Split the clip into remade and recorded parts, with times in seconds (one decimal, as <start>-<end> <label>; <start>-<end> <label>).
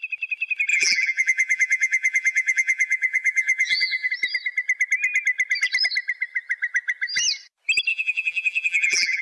0.0-0.7 recorded; 0.7-4.1 remade; 4.1-7.9 recorded; 7.9-9.2 remade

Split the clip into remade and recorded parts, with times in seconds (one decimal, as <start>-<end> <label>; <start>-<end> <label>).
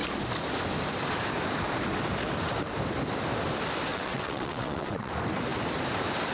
0.0-3.9 recorded; 3.9-5.1 remade; 5.1-6.3 recorded